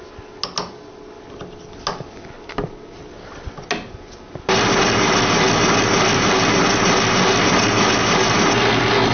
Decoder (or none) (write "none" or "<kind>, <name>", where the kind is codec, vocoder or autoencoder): none